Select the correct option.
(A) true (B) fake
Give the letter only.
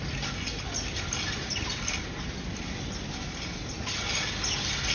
A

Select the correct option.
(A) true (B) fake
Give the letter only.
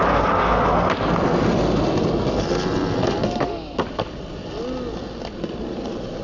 A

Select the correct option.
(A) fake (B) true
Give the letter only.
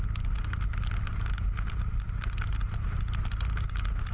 B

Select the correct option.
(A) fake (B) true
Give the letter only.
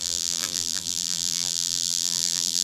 A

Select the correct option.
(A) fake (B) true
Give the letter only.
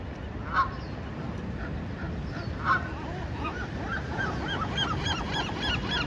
B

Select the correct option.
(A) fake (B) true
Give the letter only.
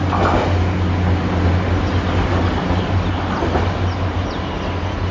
B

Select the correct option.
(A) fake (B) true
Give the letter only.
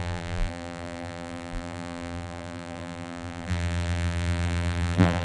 A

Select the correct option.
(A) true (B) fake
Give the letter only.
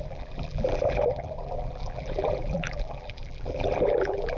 B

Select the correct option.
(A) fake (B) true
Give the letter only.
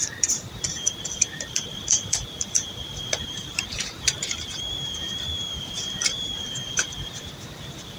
A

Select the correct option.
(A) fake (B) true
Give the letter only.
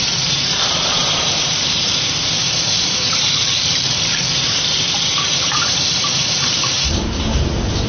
A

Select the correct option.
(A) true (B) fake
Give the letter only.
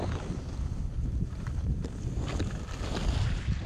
A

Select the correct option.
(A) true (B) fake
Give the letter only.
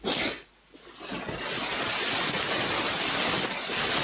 A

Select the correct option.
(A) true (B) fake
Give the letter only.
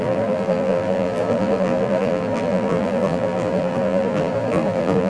B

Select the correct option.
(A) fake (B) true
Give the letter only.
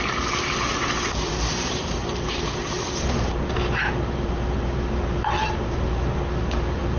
A